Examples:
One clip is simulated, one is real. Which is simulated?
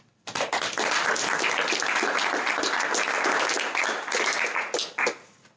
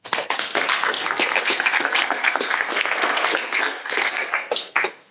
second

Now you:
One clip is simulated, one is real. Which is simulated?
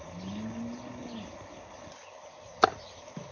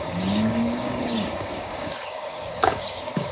second